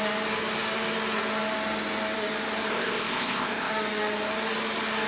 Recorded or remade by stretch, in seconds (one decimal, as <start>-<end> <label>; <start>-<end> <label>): 0.0-2.7 recorded; 2.7-3.7 remade; 3.7-5.1 recorded